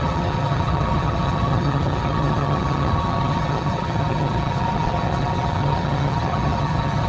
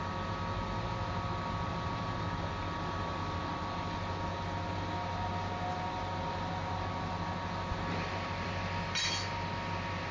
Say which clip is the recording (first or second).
second